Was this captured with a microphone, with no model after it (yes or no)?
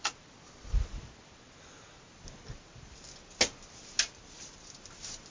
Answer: yes